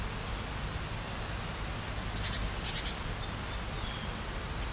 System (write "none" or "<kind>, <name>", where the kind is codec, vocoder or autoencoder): none